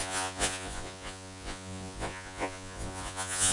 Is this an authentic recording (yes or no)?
no